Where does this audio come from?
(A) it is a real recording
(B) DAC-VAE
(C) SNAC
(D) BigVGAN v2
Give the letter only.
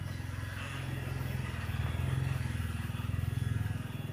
A